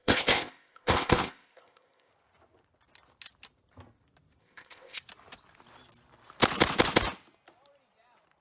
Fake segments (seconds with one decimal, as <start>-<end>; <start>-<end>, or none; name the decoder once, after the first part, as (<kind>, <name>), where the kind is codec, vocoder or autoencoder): 0.0-2.1 (codec, ZipCodec); 4.4-5.0